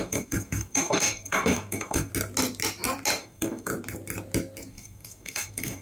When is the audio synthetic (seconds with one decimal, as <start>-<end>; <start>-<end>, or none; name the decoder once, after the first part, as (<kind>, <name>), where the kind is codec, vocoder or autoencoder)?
0.0-2.1 (codec, DAC); 3.2-3.7; 4.7-5.8